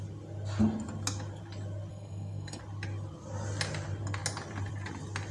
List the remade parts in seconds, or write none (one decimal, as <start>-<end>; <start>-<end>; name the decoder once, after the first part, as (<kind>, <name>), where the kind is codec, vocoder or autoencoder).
1.9-2.6 (codec, SNAC)